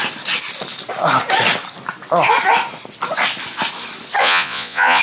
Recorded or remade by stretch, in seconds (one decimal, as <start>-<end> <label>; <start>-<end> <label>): 0.0-4.2 recorded; 4.2-5.0 remade